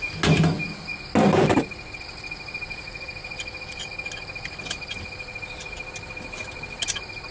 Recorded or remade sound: recorded